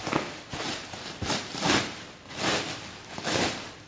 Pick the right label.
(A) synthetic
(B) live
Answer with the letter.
B